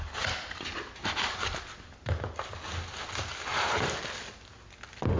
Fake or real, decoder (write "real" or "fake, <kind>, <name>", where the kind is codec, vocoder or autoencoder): real